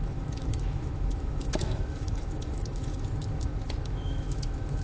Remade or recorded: remade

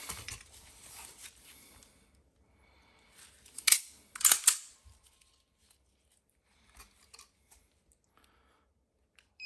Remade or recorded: recorded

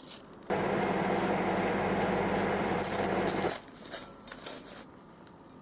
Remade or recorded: remade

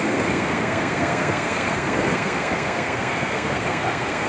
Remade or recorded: remade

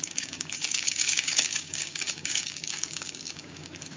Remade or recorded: remade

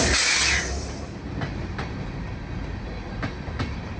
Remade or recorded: recorded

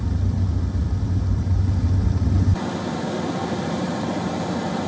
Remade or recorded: remade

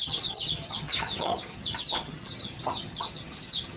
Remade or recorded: remade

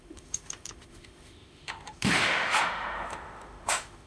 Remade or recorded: remade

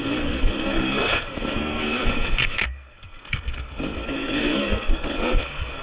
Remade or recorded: remade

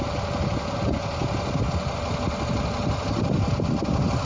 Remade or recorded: recorded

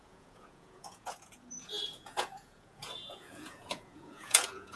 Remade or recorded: remade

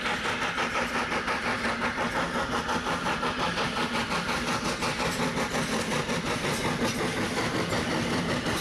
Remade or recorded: recorded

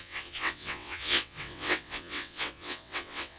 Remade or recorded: remade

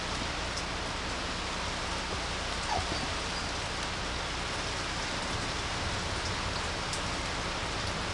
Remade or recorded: recorded